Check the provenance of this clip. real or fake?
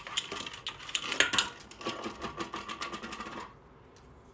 real